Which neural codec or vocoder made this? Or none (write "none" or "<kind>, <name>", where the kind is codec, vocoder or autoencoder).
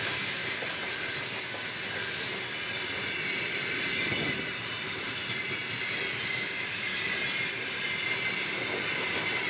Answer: none